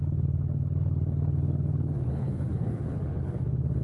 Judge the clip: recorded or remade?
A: remade